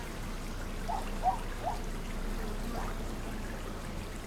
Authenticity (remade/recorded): recorded